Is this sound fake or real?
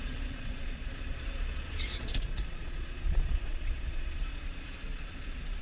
fake